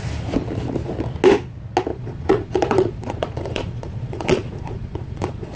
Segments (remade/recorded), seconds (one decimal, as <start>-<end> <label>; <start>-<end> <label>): 0.0-1.9 recorded; 1.9-5.6 remade